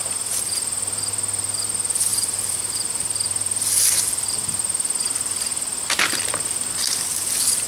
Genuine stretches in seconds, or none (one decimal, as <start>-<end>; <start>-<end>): 0.0-2.1; 6.7-7.7